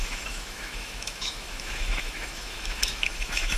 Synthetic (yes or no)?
yes